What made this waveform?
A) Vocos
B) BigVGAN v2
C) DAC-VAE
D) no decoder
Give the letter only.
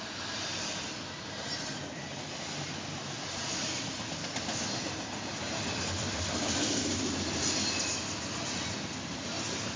D